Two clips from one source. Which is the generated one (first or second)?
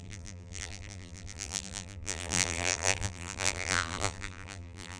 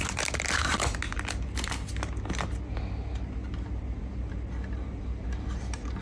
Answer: first